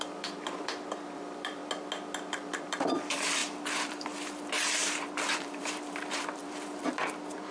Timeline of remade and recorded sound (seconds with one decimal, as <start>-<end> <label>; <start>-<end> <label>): 0.0-1.6 remade; 1.6-2.3 recorded; 2.3-7.5 remade